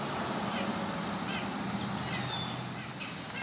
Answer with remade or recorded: recorded